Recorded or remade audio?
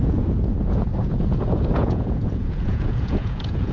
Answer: remade